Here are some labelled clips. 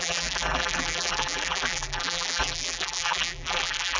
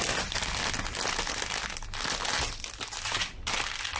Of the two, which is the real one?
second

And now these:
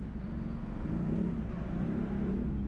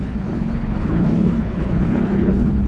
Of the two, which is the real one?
first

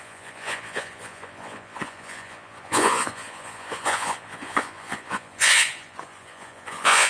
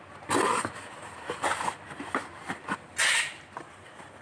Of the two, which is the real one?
second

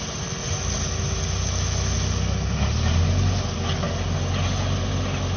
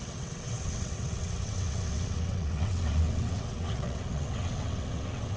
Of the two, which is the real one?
first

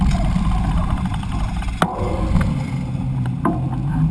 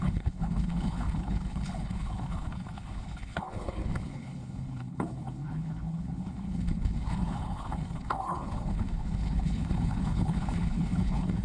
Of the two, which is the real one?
first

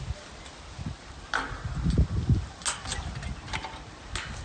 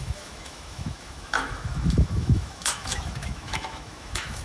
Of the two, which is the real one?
first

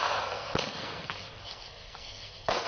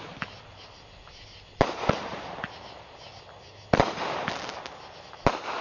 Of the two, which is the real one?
second